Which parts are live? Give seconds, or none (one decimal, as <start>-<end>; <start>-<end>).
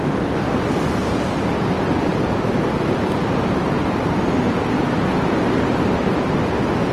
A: 0.0-6.9